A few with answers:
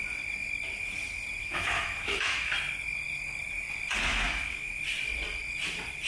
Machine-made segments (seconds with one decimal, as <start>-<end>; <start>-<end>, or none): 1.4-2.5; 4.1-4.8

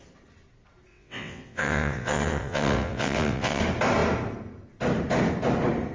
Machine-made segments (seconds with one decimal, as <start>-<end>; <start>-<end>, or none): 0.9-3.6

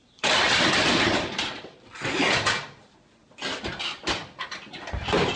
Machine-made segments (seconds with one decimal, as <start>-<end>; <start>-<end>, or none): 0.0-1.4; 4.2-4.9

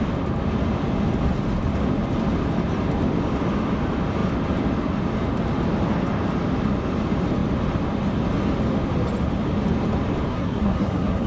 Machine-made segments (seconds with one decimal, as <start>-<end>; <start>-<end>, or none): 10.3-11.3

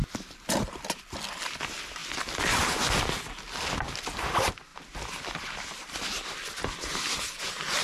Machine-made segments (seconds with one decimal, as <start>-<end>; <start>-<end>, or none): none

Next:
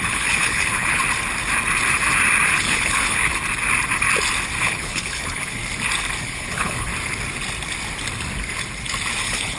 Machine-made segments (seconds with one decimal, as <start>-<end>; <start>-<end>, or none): 0.0-1.0; 2.5-3.3; 4.6-5.6; 6.2-6.9; 9.2-9.6